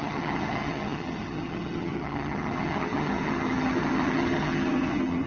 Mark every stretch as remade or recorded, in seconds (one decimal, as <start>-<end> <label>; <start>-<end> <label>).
0.0-5.3 remade